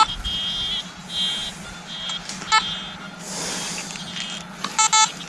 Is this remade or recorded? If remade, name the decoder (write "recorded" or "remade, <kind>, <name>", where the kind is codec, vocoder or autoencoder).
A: recorded